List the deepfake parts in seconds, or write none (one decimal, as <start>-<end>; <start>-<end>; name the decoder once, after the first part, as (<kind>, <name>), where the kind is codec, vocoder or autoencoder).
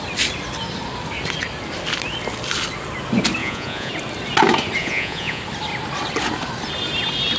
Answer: 3.4-3.9 (vocoder, Vocos); 4.8-5.4